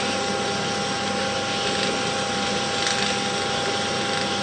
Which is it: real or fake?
real